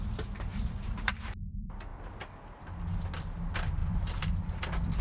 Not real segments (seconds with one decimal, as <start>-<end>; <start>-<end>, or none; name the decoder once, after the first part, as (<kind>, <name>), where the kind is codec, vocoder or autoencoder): 0.5-1.1 (vocoder, BigVGAN v2); 3.8-4.6